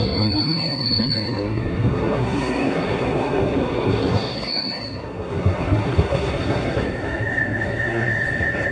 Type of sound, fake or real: fake